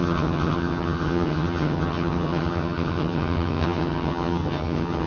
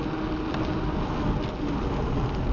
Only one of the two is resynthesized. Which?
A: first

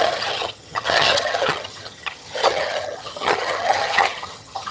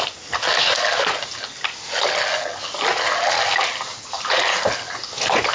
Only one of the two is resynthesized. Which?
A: first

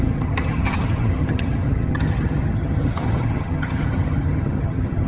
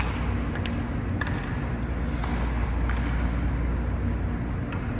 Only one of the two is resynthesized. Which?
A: first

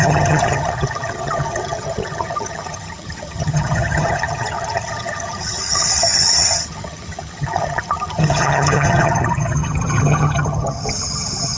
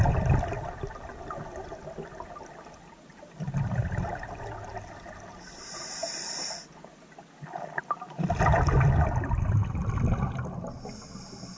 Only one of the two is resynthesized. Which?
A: first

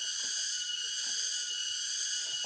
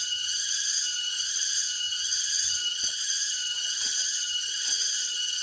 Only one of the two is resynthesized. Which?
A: second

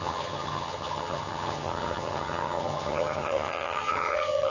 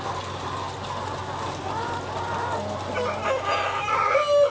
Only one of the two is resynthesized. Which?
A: first